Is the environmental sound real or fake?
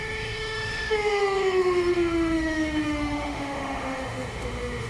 fake